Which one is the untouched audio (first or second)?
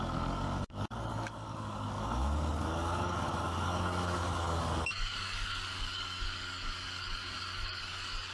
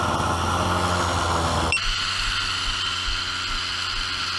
second